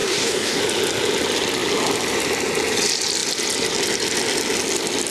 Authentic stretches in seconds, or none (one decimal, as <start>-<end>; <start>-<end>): 0.6-5.1